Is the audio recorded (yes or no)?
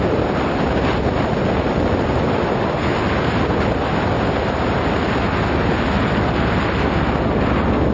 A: yes